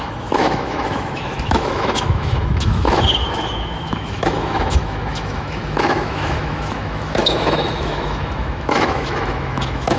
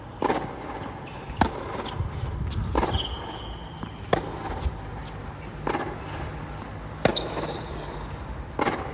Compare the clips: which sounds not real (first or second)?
first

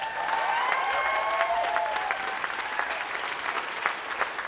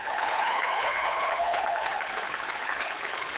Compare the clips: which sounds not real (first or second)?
second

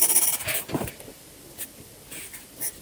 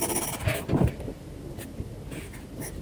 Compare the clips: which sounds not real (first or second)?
first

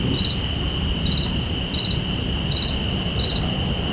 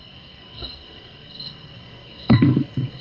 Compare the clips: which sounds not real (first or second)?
second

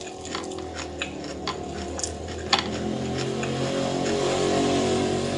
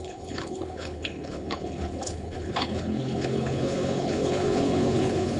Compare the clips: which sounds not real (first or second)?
second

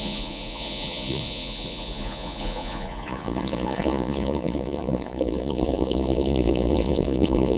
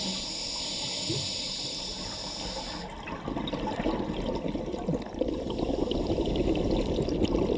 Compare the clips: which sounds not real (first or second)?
first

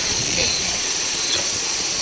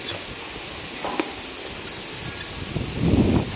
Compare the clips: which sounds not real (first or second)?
first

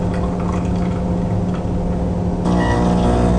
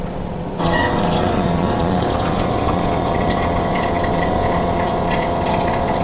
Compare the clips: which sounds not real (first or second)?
second